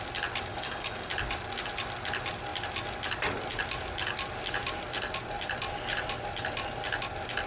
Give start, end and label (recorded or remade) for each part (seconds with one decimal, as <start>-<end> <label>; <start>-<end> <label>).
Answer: 0.0-0.5 recorded; 0.5-1.1 remade; 1.1-7.5 recorded